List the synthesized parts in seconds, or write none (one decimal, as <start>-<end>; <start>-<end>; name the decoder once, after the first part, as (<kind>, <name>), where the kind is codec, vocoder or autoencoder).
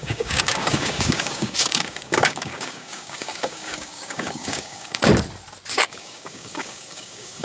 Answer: 0.0-5.1 (codec, DAC); 5.7-7.4